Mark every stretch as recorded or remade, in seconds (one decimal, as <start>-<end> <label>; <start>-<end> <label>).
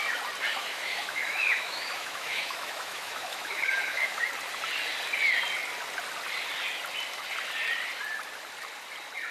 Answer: 0.0-0.5 recorded; 0.5-4.3 remade; 4.3-9.3 recorded